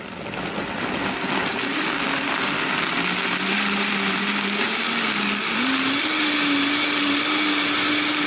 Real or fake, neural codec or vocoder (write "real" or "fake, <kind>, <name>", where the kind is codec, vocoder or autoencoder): real